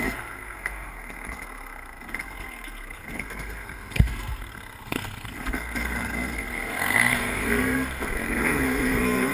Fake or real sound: fake